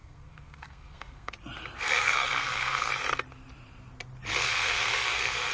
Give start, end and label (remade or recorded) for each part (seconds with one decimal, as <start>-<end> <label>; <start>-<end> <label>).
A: 0.0-1.3 remade; 1.3-1.8 recorded; 1.8-2.9 remade; 2.9-4.4 recorded; 4.4-5.5 remade